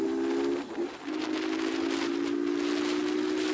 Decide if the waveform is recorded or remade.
recorded